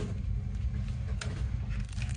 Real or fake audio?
real